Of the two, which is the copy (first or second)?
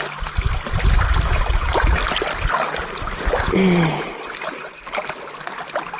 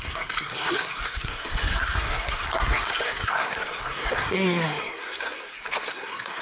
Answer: second